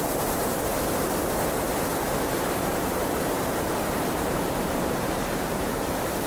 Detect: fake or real fake